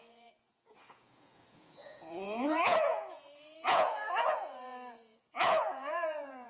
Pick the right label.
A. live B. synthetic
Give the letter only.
B